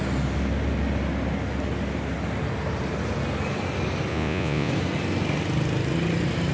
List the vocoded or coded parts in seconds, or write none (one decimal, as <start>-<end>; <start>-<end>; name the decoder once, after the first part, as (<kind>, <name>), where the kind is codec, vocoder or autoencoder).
4.1-4.7 (vocoder, Vocos)